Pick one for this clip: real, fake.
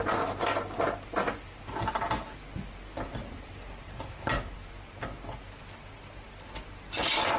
real